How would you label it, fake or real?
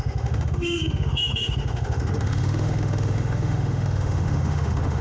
fake